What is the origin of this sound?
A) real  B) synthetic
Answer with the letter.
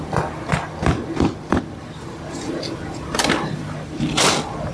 B